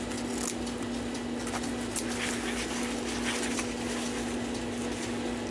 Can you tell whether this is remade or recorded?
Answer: recorded